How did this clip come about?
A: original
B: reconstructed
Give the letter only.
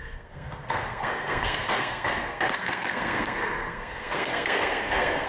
B